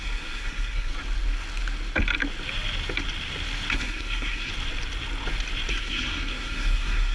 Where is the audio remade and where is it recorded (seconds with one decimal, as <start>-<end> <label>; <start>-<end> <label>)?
0.0-0.9 remade; 0.9-3.7 recorded; 3.7-4.5 remade; 4.5-5.7 recorded; 5.7-7.1 remade